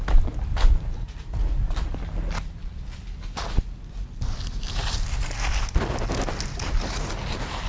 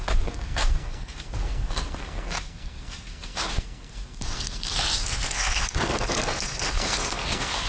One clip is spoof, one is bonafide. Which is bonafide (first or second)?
first